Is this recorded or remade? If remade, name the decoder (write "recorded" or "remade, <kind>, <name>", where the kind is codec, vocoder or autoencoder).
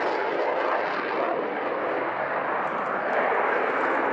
recorded